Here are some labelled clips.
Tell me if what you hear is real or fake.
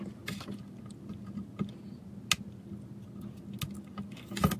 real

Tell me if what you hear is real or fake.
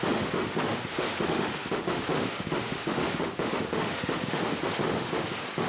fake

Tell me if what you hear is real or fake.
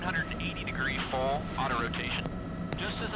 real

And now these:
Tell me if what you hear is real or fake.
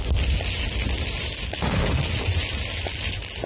real